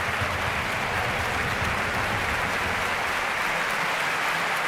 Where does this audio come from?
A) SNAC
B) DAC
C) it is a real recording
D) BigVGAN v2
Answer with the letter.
C